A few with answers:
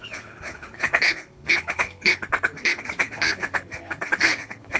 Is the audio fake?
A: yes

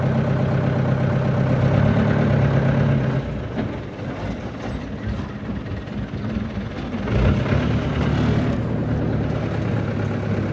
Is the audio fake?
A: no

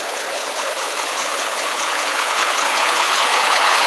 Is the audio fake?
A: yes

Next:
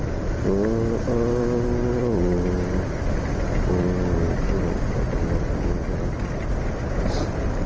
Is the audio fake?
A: no